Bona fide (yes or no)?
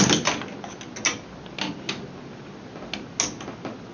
yes